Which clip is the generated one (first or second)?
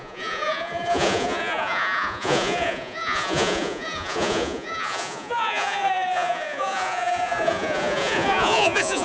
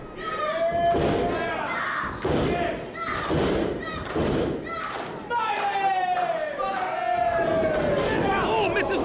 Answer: first